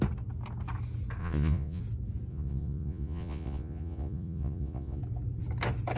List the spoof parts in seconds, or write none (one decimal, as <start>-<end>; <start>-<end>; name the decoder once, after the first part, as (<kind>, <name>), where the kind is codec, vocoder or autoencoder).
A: 1.2-1.8 (vocoder, Vocos); 2.3-5.0